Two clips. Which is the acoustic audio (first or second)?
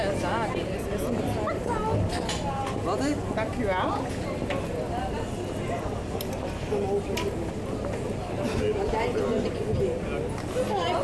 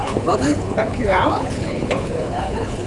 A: first